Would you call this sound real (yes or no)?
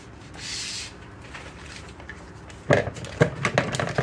yes